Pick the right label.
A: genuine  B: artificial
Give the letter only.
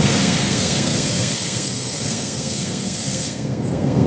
B